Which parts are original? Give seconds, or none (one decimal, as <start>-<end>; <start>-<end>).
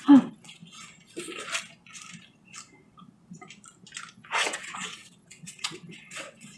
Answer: 0.6-4.1